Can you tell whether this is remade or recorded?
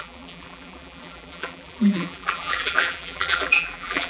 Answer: remade